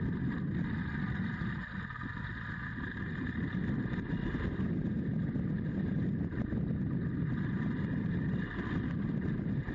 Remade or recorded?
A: recorded